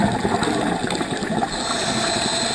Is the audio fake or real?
real